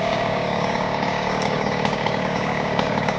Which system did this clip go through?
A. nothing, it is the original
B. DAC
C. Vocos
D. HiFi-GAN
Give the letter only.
B